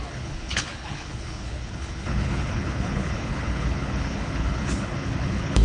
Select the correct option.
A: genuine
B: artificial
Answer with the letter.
B